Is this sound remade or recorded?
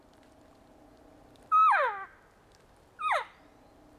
recorded